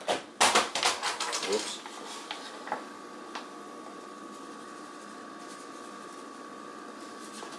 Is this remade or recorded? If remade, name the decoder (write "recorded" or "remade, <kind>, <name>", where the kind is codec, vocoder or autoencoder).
recorded